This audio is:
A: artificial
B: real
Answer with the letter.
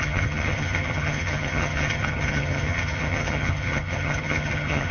A